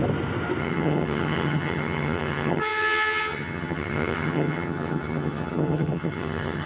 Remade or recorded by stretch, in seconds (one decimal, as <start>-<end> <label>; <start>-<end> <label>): 0.0-0.6 recorded; 0.6-6.7 remade